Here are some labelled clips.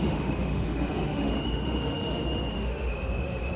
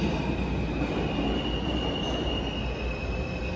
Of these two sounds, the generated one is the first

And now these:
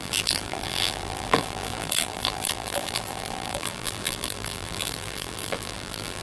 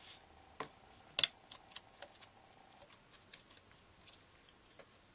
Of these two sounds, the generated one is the first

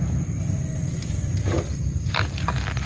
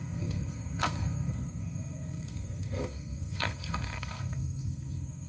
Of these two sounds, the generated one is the second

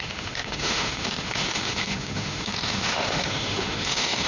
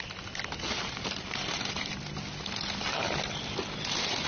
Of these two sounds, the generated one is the first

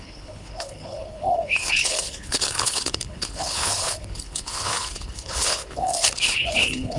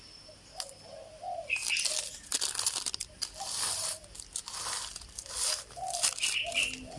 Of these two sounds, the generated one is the first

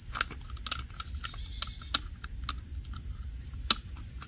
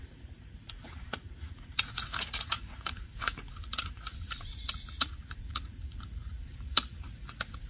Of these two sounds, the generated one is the second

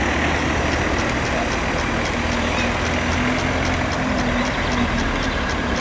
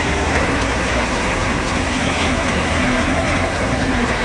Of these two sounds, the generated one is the second